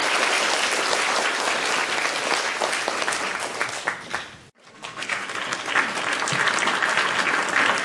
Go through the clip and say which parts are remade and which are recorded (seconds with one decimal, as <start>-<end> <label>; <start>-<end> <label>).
0.0-4.7 recorded; 4.7-5.2 remade; 5.2-7.8 recorded